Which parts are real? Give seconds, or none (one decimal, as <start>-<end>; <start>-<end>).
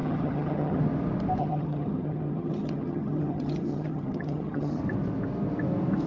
0.8-1.4; 4.8-6.1